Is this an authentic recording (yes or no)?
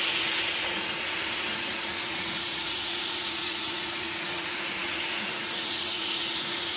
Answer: no